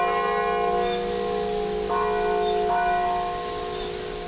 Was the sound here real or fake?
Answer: real